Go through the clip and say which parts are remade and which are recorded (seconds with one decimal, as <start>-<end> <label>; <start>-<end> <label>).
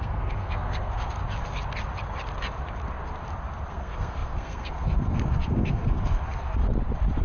0.0-1.2 remade; 1.2-3.7 recorded; 3.7-6.7 remade; 6.7-7.2 recorded